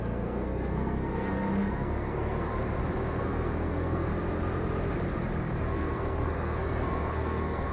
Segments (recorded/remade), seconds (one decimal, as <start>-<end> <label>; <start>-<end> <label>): 0.0-2.5 remade; 2.5-3.2 recorded; 3.2-4.1 remade; 4.1-5.6 recorded; 5.6-7.7 remade